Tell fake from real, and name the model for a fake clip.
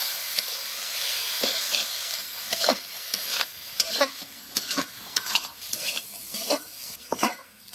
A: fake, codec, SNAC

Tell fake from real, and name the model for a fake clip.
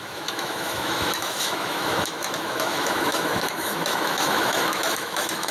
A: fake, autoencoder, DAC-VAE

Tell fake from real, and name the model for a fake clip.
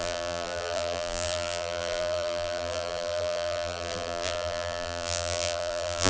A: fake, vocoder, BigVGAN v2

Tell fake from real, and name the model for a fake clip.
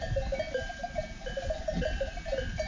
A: real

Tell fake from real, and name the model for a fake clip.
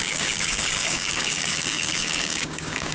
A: fake, codec, DAC